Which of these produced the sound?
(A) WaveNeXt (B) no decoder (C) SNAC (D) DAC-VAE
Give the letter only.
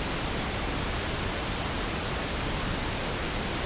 B